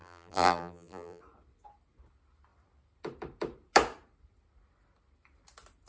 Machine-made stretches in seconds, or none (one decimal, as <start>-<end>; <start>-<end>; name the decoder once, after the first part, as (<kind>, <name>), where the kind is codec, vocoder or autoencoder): 0.0-1.2 (vocoder, BigVGAN v2)